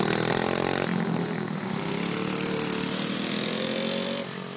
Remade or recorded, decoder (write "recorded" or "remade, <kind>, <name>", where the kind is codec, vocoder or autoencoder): recorded